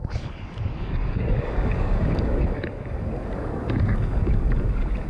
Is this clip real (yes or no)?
no